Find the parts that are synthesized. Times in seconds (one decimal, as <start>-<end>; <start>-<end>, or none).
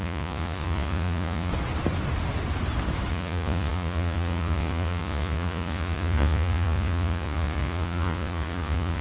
0.0-1.5; 3.1-9.0